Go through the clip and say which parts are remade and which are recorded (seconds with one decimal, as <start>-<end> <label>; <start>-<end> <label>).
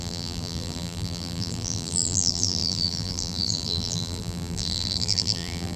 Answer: 0.0-5.8 remade